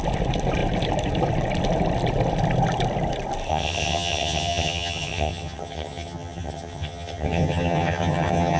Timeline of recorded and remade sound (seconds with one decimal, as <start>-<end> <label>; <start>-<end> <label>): 0.0-3.5 recorded; 3.5-8.6 remade

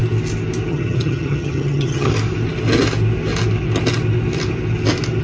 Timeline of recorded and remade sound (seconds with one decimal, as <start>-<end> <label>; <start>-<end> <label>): 0.0-0.7 recorded; 0.7-2.1 remade; 2.1-5.2 recorded